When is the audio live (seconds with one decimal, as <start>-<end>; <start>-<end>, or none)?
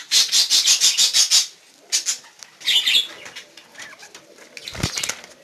0.0-5.4